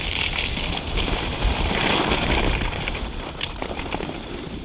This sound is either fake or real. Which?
real